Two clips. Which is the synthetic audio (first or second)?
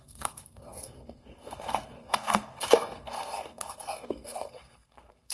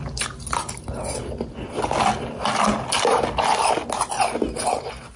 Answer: first